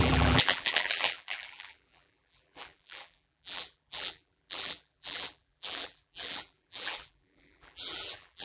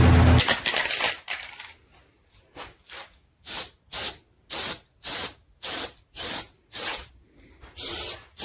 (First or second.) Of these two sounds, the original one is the second